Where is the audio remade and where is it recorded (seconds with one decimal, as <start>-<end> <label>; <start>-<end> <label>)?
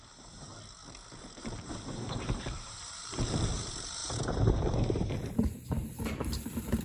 0.0-0.5 remade; 0.5-1.2 recorded; 1.2-6.8 remade